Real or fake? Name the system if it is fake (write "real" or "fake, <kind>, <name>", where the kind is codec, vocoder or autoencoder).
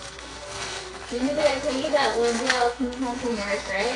fake, codec, SNAC